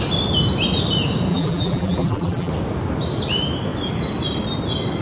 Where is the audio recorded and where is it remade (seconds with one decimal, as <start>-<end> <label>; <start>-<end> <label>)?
0.0-1.3 recorded; 1.3-2.5 remade; 2.5-5.0 recorded